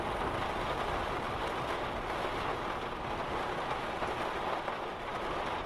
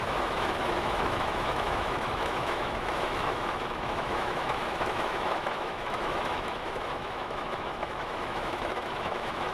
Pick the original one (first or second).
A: first